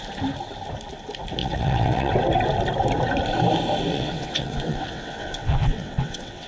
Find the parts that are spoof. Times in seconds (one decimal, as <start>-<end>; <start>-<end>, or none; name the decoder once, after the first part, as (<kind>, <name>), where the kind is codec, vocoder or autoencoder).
1.4-2.1 (vocoder, WaveNeXt); 3.9-6.5